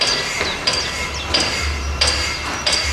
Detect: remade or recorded recorded